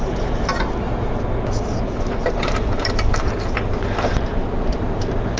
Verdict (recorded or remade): recorded